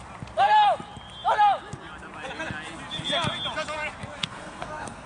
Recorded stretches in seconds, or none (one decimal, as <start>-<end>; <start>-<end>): 0.0-4.2